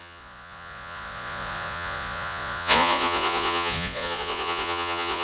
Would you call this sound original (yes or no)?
no